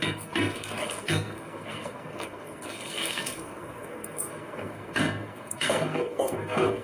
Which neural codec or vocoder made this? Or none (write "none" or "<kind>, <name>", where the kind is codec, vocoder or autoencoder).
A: codec, SNAC